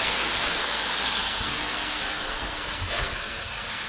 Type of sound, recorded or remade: remade